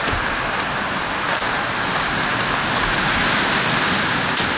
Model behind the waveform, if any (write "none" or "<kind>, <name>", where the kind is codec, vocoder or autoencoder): none